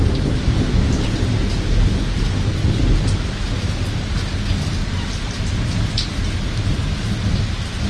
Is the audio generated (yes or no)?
no